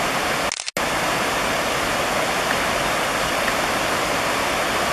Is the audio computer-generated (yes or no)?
no